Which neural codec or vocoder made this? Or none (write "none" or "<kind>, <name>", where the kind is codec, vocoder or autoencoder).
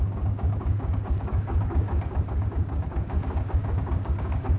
codec, DAC